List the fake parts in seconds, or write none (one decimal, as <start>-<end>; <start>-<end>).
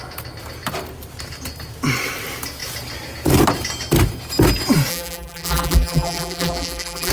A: 4.9-7.1